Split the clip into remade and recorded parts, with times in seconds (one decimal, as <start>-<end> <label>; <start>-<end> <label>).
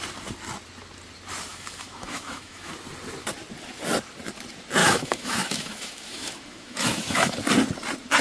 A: 0.0-1.5 recorded; 1.5-2.7 remade; 2.7-4.8 recorded; 4.8-7.3 remade; 7.3-8.2 recorded